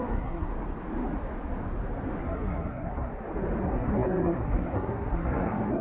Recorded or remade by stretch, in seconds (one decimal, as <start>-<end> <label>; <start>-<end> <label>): 0.0-0.5 remade; 0.5-2.2 recorded; 2.2-3.1 remade; 3.1-3.6 recorded; 3.6-5.8 remade